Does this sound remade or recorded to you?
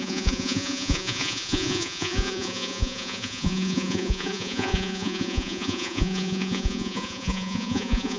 remade